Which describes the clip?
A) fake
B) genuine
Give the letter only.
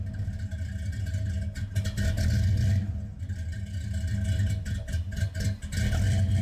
B